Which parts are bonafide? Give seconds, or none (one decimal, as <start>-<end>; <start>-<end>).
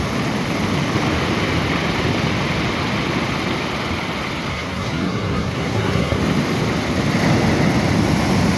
0.0-4.5; 6.2-8.6